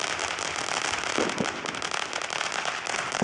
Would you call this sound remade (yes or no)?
no